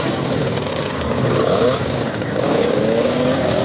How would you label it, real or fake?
fake